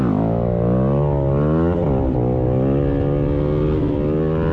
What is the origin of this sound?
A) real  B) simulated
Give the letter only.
A